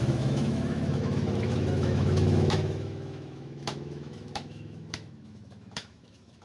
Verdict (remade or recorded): remade